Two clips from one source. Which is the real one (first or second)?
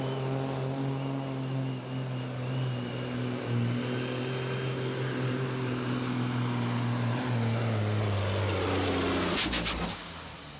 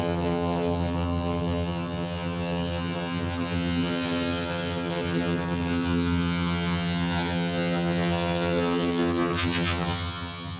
first